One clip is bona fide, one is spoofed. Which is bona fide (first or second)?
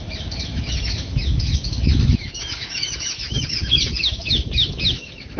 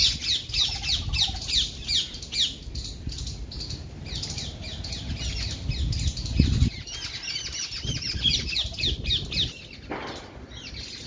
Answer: second